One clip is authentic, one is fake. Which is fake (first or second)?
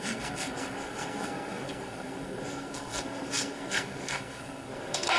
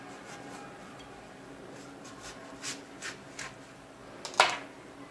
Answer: first